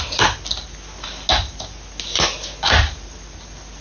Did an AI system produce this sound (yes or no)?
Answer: no